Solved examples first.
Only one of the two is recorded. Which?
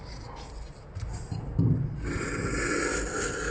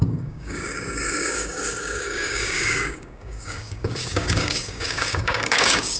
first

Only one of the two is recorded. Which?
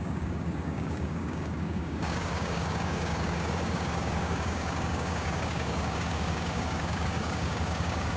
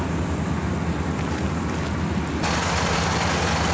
second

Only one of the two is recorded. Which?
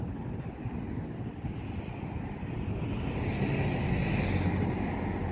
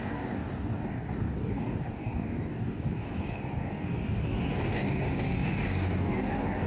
first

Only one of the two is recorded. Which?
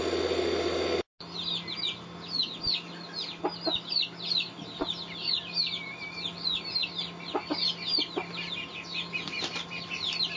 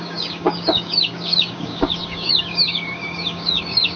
first